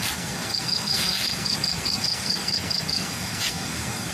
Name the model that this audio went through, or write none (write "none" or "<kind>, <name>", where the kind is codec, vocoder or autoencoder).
codec, SNAC